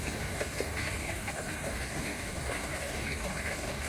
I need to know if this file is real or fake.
fake